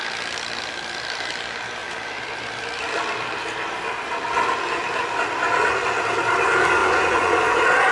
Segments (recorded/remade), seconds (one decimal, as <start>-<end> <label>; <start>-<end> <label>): 0.0-6.8 recorded; 6.8-7.4 remade; 7.4-7.9 recorded